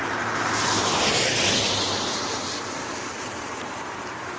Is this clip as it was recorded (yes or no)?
no